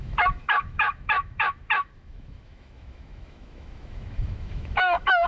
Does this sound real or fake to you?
fake